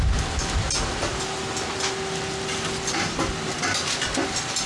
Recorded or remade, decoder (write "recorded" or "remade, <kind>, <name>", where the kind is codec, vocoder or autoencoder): recorded